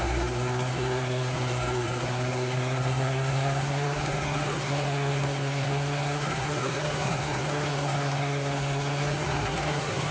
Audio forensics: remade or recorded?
remade